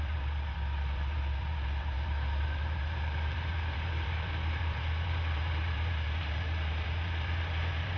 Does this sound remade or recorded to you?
remade